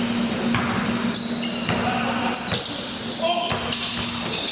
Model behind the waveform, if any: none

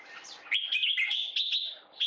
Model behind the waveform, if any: none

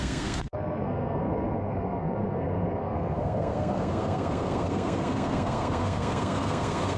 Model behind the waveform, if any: codec, SNAC